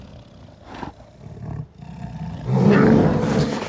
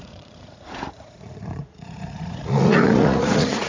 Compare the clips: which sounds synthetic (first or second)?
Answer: second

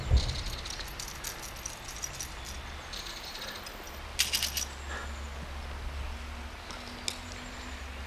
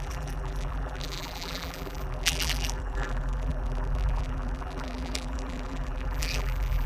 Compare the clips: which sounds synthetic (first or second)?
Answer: second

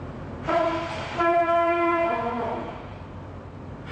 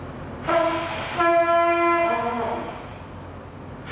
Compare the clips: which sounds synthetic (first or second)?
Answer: first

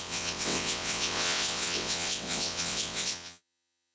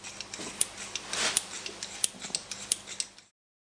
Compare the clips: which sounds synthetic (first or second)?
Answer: first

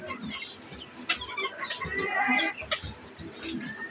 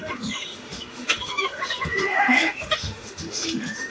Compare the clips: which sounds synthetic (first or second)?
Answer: second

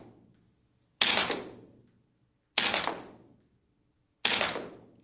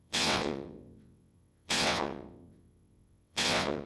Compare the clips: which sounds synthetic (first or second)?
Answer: second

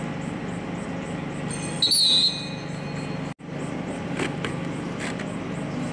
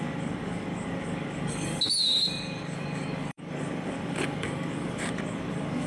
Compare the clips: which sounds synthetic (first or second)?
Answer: second